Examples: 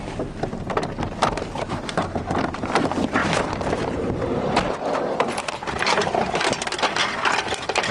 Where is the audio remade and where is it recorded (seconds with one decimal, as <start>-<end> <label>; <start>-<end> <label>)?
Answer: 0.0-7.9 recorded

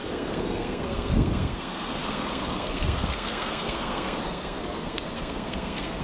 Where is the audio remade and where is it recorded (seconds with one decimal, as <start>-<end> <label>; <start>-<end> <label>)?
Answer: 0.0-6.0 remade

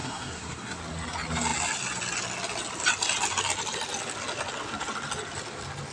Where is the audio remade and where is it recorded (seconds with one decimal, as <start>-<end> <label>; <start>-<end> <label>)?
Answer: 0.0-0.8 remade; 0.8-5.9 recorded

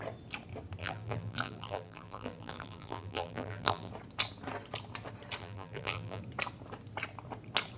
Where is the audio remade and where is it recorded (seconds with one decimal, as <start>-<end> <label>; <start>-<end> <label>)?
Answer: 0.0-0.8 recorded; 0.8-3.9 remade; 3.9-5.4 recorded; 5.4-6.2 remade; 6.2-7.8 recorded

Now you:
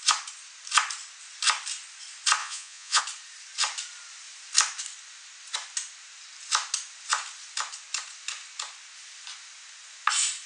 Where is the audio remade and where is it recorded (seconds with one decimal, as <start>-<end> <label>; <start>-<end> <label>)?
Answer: 0.0-2.4 recorded; 2.4-3.0 remade; 3.0-10.5 recorded

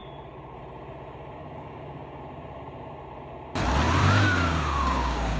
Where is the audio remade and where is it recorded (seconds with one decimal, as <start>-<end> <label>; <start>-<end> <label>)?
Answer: 0.0-1.4 recorded; 1.4-2.2 remade; 2.2-4.0 recorded; 4.0-5.4 remade